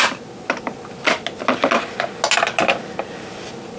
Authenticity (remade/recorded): recorded